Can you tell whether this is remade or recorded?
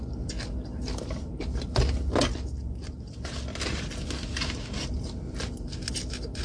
recorded